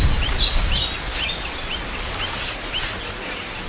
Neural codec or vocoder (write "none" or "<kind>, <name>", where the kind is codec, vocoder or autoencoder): none